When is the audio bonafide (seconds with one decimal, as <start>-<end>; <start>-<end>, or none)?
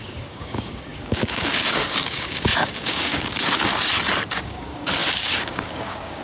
3.7-4.3